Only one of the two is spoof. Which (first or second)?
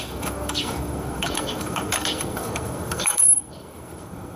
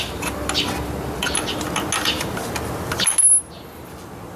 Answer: first